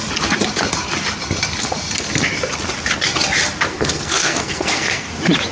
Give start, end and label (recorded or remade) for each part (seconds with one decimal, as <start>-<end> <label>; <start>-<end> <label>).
0.0-3.7 recorded; 3.7-5.1 remade; 5.1-5.5 recorded